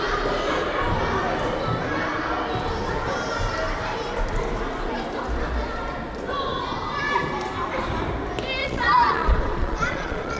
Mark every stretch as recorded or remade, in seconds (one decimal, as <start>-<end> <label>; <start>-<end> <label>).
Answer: 0.0-8.6 recorded; 8.6-10.4 remade